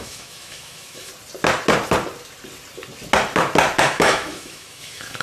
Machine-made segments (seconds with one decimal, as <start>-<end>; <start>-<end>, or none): 0.0-1.1; 3.8-5.2